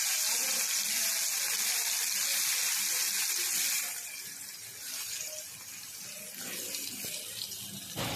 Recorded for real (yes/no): yes